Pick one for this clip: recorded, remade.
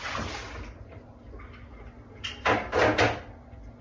recorded